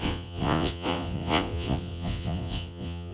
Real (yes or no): no